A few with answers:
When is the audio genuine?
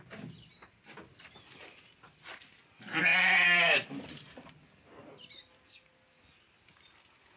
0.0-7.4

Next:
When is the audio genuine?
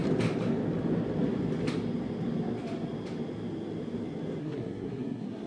0.0-4.4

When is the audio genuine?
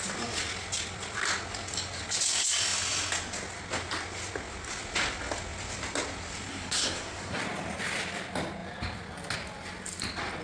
0.0-6.5; 7.4-10.4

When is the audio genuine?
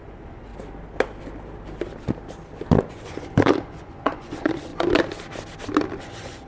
0.5-2.9; 4.7-6.0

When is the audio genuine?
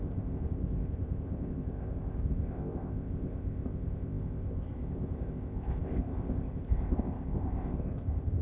none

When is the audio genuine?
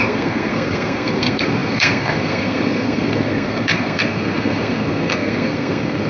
none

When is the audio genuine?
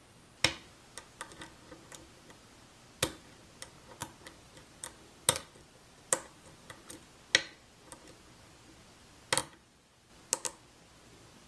0.0-4.0; 7.1-9.4; 10.1-11.5